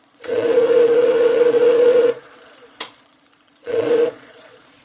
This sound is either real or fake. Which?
fake